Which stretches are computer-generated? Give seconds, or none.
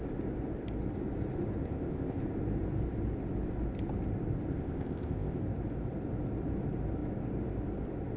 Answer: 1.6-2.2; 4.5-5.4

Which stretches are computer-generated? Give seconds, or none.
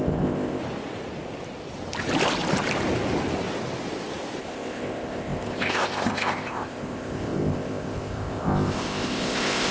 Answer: 0.0-0.6; 4.4-9.7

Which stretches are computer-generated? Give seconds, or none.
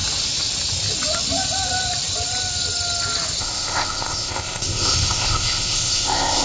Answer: 3.4-6.4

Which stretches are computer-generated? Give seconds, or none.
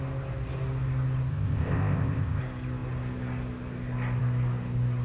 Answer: 1.3-2.4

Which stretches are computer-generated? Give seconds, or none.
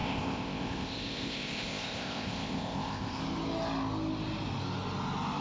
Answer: 0.0-3.2